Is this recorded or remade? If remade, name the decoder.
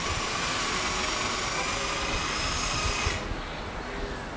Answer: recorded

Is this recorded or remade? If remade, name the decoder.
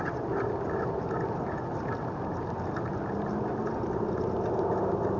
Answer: recorded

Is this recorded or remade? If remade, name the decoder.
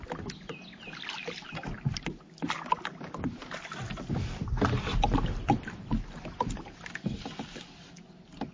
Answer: recorded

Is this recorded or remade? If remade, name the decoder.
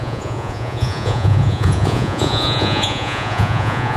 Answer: remade, vocoder, Vocos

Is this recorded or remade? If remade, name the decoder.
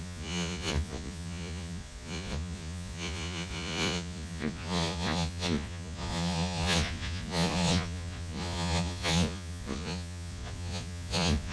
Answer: remade, vocoder, Vocos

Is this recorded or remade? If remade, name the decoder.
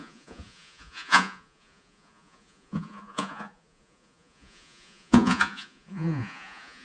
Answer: remade, vocoder, Vocos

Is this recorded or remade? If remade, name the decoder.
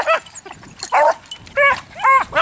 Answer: recorded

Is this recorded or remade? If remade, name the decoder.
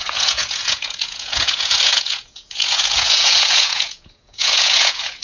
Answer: remade, vocoder, Vocos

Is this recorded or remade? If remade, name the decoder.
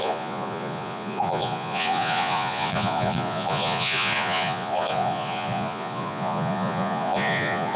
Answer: remade, vocoder, Vocos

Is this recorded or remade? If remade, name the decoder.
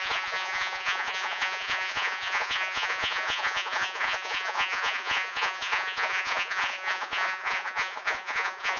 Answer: remade, vocoder, Vocos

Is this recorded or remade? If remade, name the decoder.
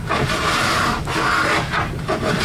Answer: recorded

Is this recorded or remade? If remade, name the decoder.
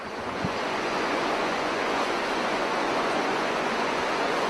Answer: remade, vocoder, Vocos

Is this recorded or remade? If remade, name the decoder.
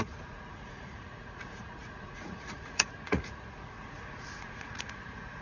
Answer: remade, vocoder, Vocos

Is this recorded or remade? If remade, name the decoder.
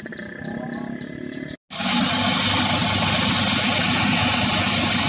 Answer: recorded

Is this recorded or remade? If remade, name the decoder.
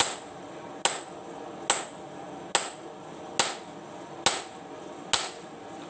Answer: recorded